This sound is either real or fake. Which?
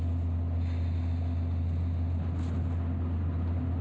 real